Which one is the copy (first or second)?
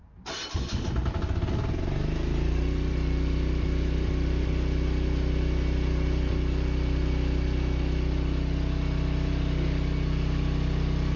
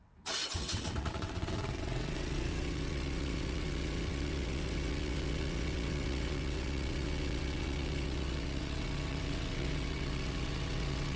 second